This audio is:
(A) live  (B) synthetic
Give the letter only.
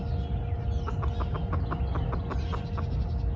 A